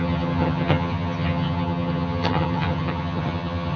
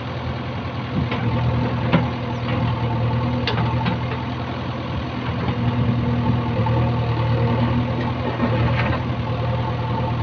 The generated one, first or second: first